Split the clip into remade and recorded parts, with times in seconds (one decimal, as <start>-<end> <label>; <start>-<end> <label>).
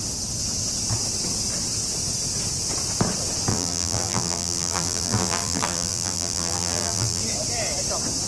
0.0-3.5 recorded; 3.5-7.2 remade; 7.2-8.3 recorded